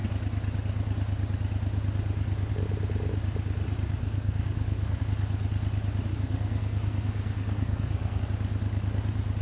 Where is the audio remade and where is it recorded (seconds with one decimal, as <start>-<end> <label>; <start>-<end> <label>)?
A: 0.0-4.0 recorded; 4.0-5.0 remade; 5.0-6.1 recorded; 6.1-8.2 remade; 8.2-9.4 recorded